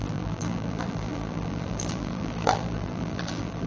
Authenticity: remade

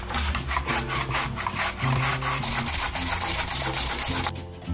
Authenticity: recorded